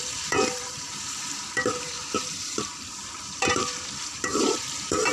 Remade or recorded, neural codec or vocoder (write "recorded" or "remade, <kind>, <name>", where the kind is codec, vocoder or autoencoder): remade, vocoder, BigVGAN v2